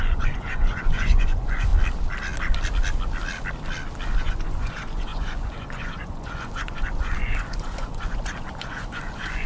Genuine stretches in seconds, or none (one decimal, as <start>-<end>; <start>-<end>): 1.7-4.2